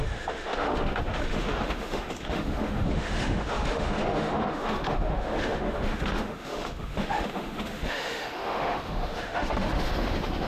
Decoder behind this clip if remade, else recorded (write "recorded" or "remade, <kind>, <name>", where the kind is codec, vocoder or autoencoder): remade, autoencoder, DAC-VAE